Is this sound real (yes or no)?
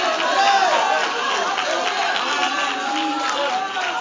yes